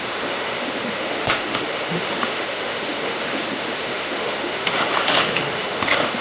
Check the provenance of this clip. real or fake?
fake